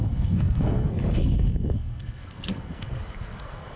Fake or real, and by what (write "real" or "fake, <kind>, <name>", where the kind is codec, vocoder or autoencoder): fake, codec, SNAC